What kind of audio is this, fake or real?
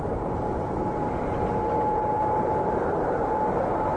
fake